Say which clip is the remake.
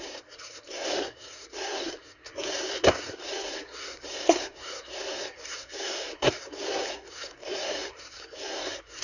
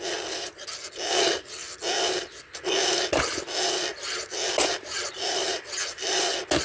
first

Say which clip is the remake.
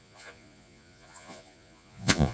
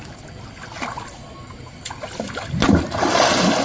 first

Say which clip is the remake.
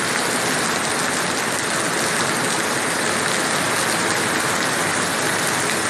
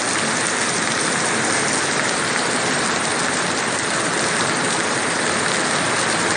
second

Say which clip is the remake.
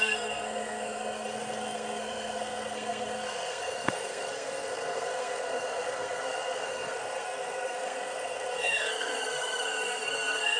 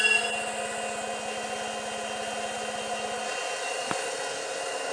first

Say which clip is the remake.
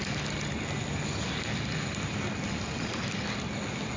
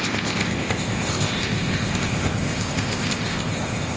second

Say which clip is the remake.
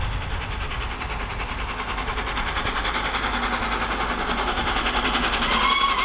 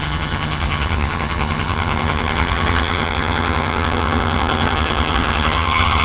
second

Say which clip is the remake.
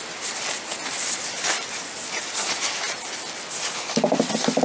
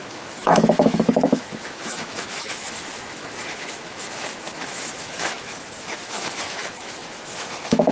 second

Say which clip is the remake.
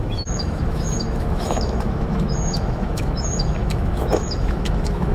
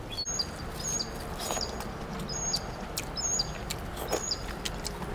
first